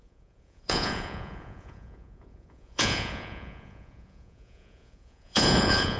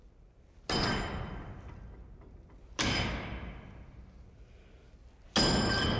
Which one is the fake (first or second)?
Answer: first